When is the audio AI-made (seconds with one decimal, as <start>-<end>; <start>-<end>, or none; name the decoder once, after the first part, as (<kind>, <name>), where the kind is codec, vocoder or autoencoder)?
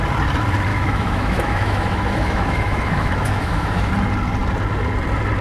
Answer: 0.7-3.9 (autoencoder, DAC-VAE)